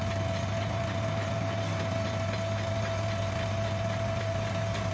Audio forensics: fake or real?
real